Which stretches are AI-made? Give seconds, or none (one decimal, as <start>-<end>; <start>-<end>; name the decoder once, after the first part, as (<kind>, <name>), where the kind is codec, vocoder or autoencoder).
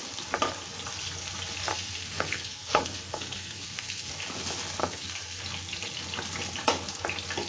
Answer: 1.7-4.1 (codec, SNAC); 4.8-5.4